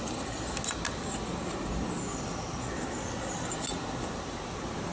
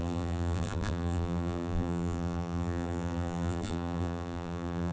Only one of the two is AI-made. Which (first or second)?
second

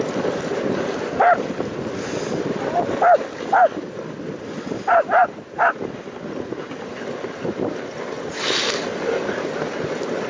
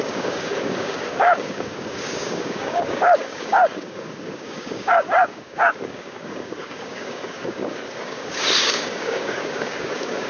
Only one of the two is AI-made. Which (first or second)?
second